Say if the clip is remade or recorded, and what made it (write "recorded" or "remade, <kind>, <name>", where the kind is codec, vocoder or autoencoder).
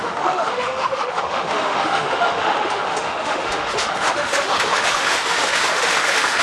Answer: remade, autoencoder, DAC-VAE